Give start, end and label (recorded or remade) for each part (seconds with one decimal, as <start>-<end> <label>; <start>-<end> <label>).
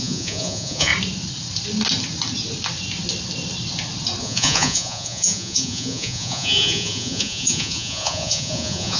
0.0-0.9 remade; 0.9-4.2 recorded; 4.2-9.0 remade